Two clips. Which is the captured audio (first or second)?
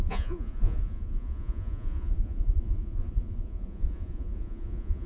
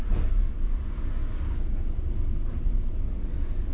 second